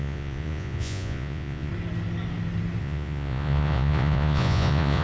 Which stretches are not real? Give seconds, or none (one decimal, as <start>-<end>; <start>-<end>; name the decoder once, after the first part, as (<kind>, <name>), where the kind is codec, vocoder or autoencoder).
0.0-1.7 (vocoder, Vocos); 2.8-5.0